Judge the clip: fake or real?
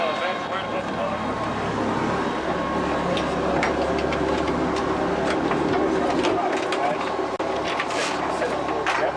real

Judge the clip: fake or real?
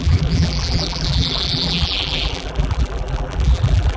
fake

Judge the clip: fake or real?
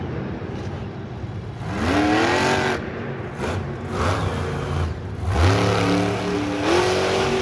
real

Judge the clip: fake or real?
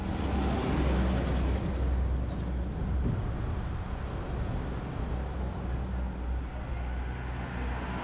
real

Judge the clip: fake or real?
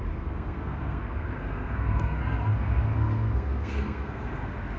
fake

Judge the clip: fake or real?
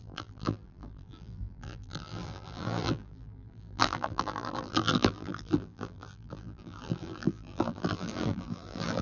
fake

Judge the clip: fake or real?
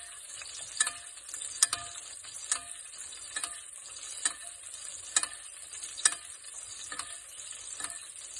real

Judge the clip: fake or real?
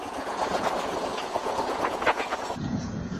fake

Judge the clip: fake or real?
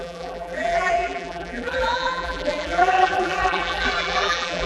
fake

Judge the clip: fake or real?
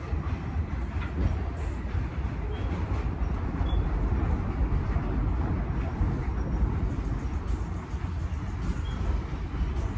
real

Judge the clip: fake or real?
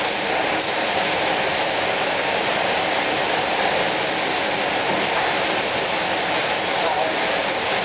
real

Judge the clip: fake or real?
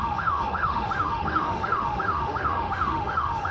fake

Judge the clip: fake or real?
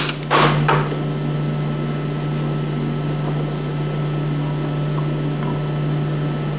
real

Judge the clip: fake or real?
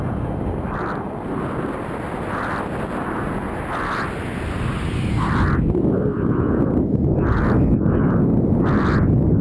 real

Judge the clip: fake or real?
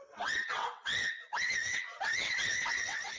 fake